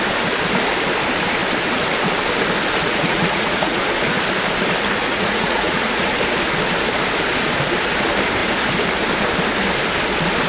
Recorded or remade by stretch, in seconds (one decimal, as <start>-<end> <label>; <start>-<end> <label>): 0.0-2.8 recorded; 2.8-3.8 remade; 3.8-5.0 recorded; 5.0-6.1 remade; 6.1-10.5 recorded